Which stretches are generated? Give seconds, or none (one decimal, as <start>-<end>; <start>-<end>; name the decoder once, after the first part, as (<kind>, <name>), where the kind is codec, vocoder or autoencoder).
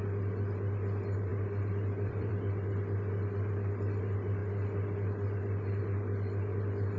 1.3-2.3 (vocoder, BigVGAN v2); 4.4-5.8